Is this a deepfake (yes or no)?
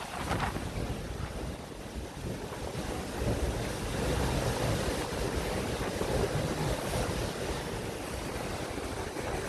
no